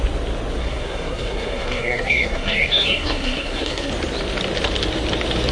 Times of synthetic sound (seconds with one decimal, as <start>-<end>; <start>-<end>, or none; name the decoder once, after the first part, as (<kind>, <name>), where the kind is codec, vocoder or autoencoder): 0.6-3.9 (codec, SNAC)